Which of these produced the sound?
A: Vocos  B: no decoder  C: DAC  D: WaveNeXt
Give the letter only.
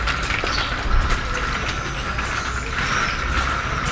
B